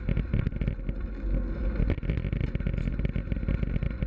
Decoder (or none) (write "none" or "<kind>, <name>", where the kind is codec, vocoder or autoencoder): none